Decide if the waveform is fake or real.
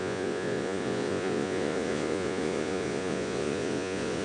fake